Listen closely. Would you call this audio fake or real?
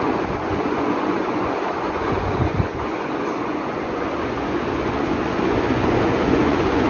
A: fake